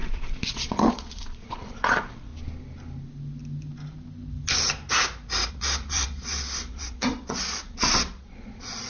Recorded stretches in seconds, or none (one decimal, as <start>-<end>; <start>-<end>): 2.3-5.5